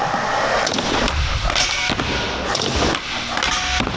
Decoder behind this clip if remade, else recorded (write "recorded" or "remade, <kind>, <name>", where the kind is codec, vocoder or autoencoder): recorded